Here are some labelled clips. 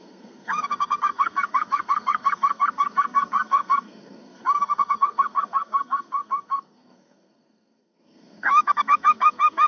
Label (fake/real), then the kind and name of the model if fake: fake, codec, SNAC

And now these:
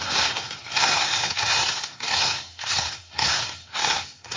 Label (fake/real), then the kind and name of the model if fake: fake, codec, SNAC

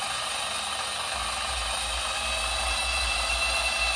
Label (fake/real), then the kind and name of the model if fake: real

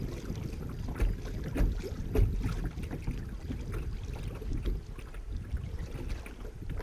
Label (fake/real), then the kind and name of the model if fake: real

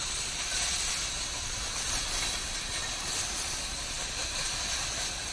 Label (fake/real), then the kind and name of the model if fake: real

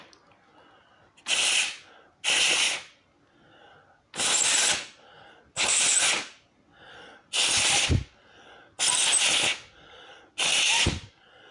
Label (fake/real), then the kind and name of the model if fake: real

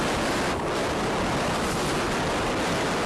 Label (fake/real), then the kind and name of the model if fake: real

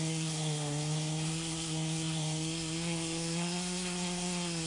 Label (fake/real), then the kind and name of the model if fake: fake, codec, SNAC